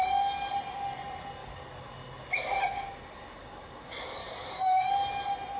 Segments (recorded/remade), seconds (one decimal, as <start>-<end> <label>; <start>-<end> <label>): 0.0-4.2 recorded; 4.2-4.9 remade; 4.9-5.6 recorded

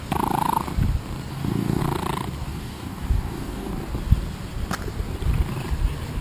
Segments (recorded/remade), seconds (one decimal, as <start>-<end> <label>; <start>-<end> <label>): 0.0-1.3 recorded; 1.3-1.8 remade; 1.8-2.4 recorded; 2.4-3.7 remade; 3.7-6.2 recorded